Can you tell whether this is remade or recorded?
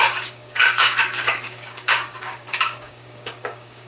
remade